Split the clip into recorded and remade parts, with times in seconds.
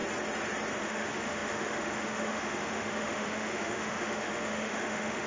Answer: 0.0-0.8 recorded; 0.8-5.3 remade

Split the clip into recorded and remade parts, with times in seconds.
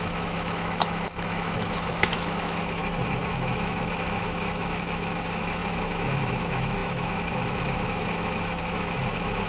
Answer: 0.0-2.8 remade; 2.8-3.3 recorded; 3.3-9.5 remade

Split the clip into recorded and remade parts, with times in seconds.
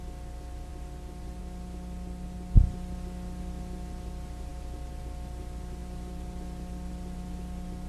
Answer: 0.0-7.9 recorded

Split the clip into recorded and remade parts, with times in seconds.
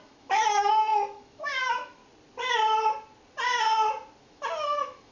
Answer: 0.0-2.0 remade; 2.0-4.2 recorded; 4.2-5.1 remade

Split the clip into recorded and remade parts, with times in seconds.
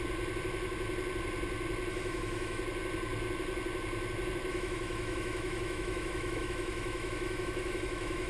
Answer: 0.0-1.9 recorded; 1.9-2.6 remade; 2.6-4.5 recorded; 4.5-8.3 remade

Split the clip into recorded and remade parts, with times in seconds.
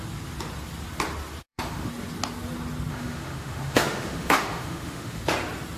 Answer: 0.0-1.4 recorded; 1.4-1.9 remade; 1.9-2.9 recorded; 2.9-5.2 remade; 5.2-5.8 recorded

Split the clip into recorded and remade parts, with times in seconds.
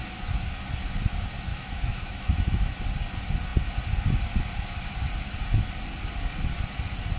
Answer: 0.0-1.5 recorded; 1.5-2.7 remade; 2.7-7.2 recorded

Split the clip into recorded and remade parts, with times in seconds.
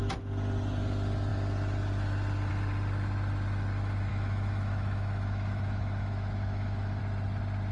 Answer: 0.0-4.1 recorded; 4.1-7.0 remade; 7.0-7.7 recorded